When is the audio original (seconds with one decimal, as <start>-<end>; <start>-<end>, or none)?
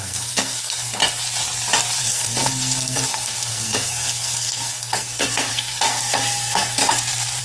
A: 1.0-2.0; 6.8-7.4